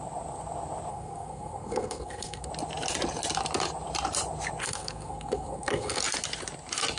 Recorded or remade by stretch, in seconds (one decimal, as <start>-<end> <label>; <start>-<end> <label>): 0.0-0.9 recorded; 0.9-2.5 remade; 2.5-4.6 recorded; 4.6-6.0 remade; 6.0-7.0 recorded